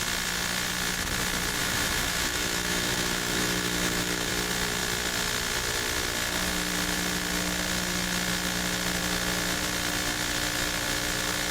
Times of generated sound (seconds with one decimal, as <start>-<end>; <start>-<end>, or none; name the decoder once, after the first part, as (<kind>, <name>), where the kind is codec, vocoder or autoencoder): 1.6-4.3 (autoencoder, DAC-VAE)